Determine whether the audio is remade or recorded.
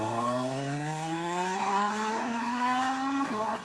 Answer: remade